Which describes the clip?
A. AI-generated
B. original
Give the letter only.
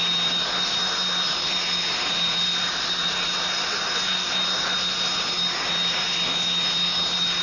B